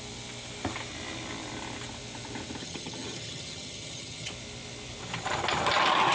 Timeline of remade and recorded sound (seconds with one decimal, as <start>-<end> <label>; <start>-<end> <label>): 0.0-2.6 recorded; 2.6-4.3 remade; 4.3-6.1 recorded